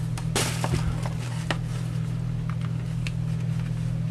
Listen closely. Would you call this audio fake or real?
real